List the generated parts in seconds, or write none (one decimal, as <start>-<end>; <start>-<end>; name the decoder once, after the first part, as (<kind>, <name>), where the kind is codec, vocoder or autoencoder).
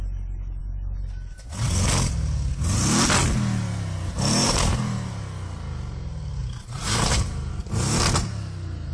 4.4-5.1 (vocoder, BigVGAN v2); 6.4-7.5